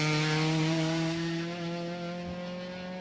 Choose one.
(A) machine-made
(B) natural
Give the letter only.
B